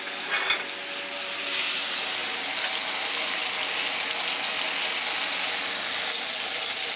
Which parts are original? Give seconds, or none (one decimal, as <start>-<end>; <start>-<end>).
0.0-7.0